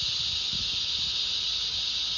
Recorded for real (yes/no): yes